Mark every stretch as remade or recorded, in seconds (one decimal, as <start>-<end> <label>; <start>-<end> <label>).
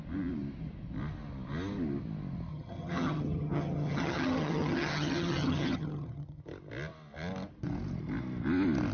0.0-2.5 recorded; 2.5-6.4 remade; 6.4-8.9 recorded